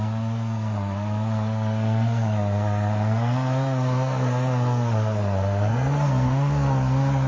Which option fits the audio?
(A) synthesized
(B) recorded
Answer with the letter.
A